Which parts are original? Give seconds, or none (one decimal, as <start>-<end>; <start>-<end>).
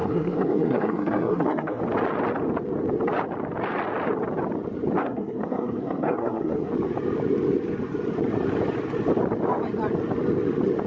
1.8-5.0; 6.7-10.9